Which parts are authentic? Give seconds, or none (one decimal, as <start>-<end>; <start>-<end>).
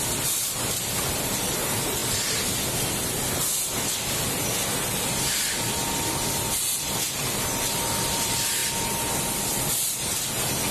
2.0-6.1; 8.6-10.7